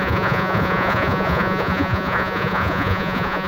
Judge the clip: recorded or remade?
remade